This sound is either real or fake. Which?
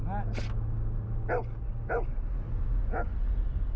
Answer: real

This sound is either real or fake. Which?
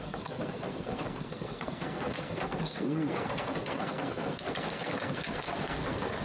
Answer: fake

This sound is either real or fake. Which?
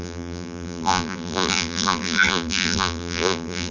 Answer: fake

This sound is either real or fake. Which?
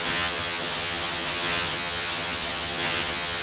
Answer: fake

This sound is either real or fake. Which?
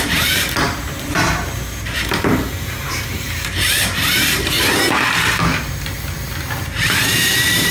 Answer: fake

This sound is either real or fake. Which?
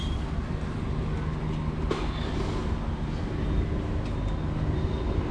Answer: real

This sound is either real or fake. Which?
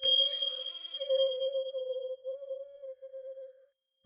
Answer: fake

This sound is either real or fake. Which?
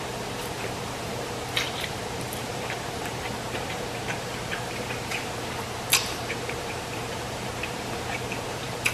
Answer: fake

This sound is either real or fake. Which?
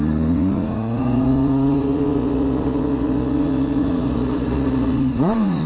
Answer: fake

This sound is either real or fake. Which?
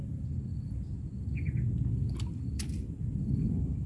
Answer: real